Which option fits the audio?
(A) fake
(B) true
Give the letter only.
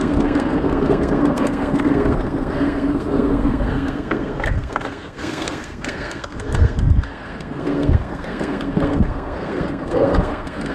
A